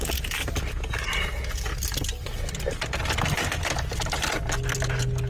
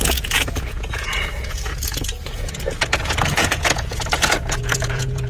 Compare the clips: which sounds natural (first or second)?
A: first